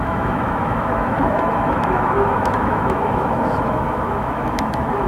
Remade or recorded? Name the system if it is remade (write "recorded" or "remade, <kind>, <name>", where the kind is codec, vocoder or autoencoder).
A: remade, autoencoder, DAC-VAE